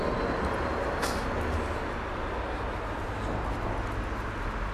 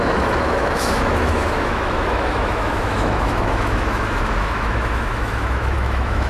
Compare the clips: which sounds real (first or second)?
first